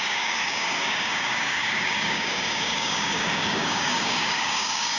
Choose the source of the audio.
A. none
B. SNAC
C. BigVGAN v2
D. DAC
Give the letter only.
D